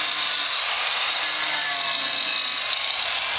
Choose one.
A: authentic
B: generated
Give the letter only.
A